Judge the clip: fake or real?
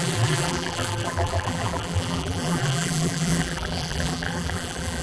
fake